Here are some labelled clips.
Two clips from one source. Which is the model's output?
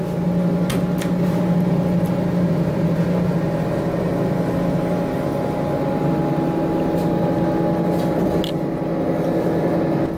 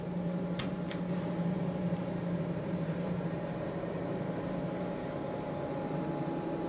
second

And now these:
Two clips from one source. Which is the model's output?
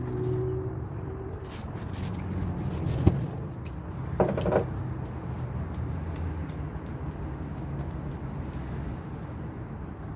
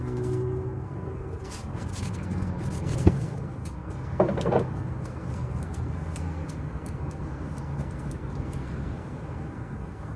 second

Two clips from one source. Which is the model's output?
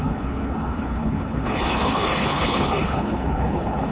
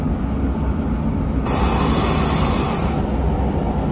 first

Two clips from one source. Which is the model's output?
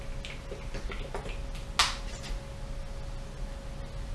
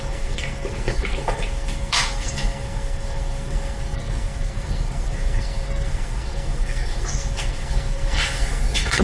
second